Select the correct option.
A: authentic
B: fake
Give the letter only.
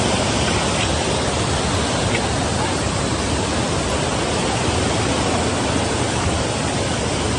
A